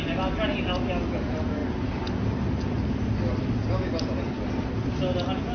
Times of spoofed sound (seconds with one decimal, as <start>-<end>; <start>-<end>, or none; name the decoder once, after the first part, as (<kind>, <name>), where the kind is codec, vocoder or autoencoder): none